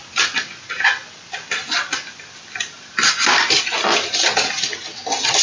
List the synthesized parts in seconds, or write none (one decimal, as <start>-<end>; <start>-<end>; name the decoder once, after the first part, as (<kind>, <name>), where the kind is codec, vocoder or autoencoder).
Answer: none